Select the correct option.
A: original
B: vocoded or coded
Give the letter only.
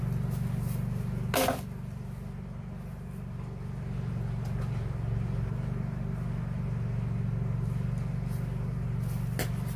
A